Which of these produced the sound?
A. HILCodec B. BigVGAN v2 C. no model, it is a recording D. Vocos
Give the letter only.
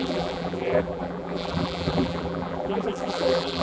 B